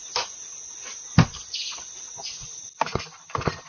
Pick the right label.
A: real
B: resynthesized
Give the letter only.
A